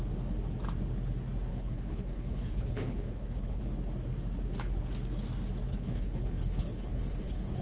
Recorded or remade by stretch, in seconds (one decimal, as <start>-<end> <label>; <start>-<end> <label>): 0.0-1.5 recorded; 1.5-3.6 remade; 3.6-5.7 recorded; 5.7-7.6 remade